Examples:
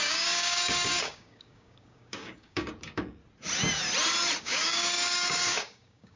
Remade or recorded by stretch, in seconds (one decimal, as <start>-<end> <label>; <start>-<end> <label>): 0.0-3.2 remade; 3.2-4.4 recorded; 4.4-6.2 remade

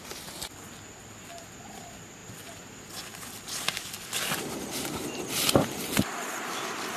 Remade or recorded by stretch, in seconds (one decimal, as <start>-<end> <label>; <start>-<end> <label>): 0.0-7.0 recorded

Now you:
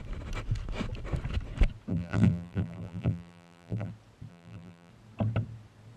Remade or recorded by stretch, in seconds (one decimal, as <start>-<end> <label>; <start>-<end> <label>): 0.0-1.9 recorded; 1.9-3.9 remade; 3.9-4.3 recorded; 4.3-4.9 remade; 4.9-6.0 recorded

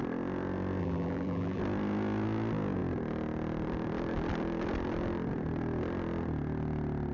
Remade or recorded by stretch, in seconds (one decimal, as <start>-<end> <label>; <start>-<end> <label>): 0.0-0.8 recorded; 0.8-1.6 remade; 1.6-7.1 recorded

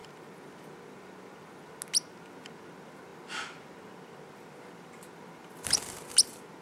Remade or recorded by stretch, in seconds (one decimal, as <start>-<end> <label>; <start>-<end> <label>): 0.0-6.6 recorded

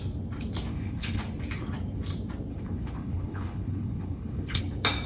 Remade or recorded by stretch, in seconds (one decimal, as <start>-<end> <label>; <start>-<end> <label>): 0.0-0.7 recorded; 0.7-1.2 remade; 1.2-2.5 recorded; 2.5-4.6 remade; 4.6-5.1 recorded